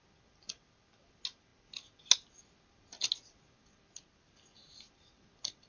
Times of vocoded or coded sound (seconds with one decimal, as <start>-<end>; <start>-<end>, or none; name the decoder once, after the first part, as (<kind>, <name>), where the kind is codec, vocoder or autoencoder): none